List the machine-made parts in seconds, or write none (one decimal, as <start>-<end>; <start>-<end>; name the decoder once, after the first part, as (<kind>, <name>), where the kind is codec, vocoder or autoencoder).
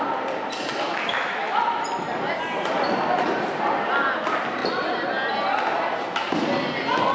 0.7-1.6 (autoencoder, DAC-VAE)